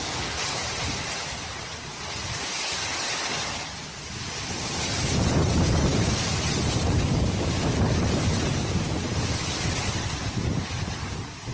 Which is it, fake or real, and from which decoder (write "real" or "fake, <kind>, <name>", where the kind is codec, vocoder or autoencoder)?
real